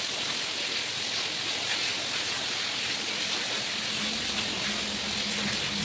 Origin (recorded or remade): recorded